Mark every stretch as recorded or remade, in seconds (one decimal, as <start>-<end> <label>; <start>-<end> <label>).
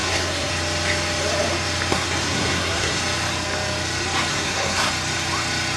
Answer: 0.0-0.5 remade; 0.5-1.9 recorded; 1.9-3.0 remade; 3.0-4.3 recorded; 4.3-4.9 remade; 4.9-5.8 recorded